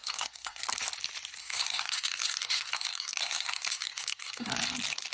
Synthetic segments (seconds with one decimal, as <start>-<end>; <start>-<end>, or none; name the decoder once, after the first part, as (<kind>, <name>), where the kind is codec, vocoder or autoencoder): 0.0-0.6 (codec, SNAC); 1.4-4.5

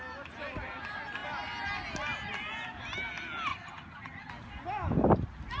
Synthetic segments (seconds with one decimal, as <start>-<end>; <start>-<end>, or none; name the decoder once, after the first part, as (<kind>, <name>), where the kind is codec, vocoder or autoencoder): 3.5-4.3 (vocoder, HiFi-GAN)